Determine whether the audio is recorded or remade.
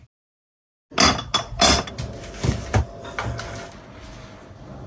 recorded